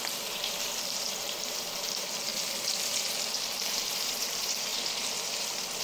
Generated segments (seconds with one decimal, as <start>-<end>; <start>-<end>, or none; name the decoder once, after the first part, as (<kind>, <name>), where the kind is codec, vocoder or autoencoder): 0.0-2.3 (vocoder, BigVGAN v2); 3.7-4.7